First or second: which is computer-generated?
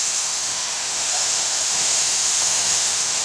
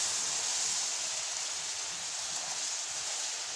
first